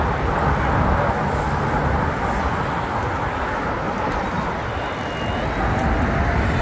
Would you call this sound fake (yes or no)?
no